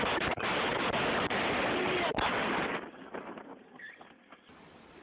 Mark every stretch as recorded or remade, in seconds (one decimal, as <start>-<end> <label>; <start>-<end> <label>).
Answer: 0.0-5.0 recorded